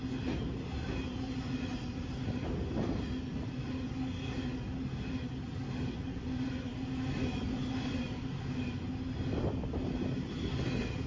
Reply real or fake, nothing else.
real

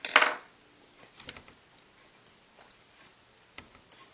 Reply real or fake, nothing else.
real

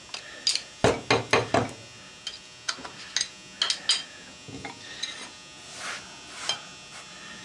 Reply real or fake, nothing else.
real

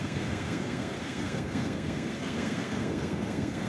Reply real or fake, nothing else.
fake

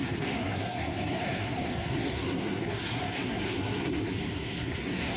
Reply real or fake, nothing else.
fake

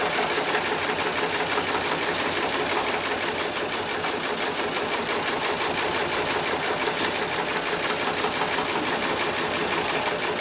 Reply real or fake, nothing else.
real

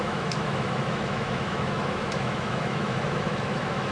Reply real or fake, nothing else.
fake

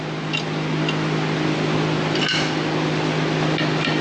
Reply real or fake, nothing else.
real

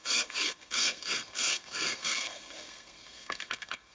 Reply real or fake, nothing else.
fake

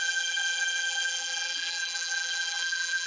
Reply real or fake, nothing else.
fake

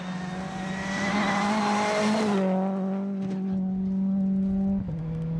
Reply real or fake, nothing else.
real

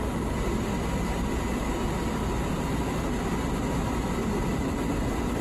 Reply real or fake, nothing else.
real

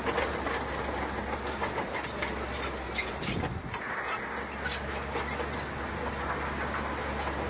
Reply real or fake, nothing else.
real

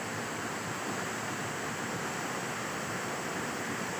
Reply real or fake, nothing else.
real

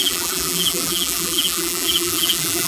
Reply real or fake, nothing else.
fake